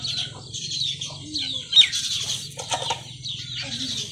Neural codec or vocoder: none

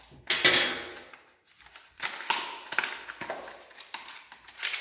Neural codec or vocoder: none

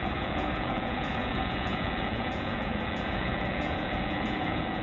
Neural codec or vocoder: vocoder, Vocos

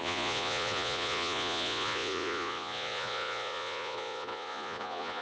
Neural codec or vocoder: vocoder, Vocos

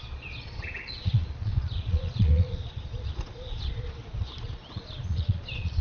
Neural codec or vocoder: vocoder, Vocos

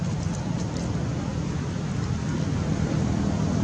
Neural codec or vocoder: none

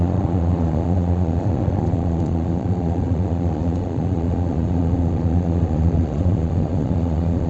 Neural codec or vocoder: vocoder, Vocos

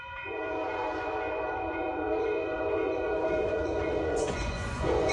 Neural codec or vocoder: vocoder, Vocos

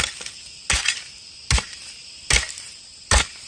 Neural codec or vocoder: none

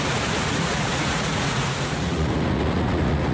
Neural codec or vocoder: vocoder, Vocos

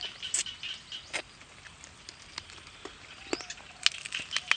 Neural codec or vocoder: none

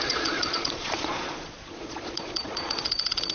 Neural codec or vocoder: vocoder, Vocos